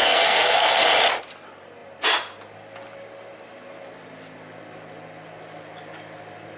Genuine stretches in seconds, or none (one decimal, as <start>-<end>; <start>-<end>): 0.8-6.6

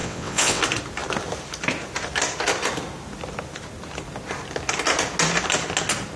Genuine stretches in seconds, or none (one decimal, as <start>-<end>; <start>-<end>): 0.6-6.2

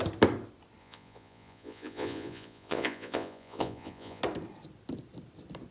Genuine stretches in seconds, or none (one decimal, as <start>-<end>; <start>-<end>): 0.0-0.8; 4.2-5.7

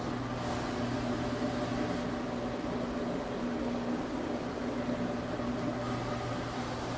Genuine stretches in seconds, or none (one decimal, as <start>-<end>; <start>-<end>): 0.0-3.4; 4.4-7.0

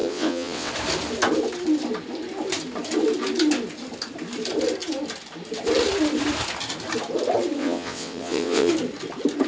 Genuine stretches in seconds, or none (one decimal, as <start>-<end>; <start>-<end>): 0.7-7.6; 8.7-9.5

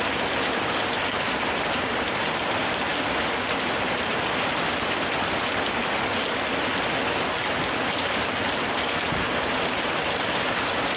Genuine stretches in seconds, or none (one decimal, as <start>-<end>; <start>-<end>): 5.8-7.7

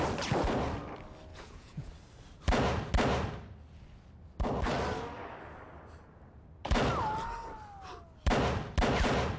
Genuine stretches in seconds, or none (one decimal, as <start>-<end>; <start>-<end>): 0.0-1.3; 1.9-9.4

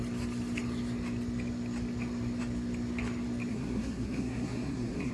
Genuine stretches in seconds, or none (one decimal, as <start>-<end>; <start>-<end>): 0.0-3.5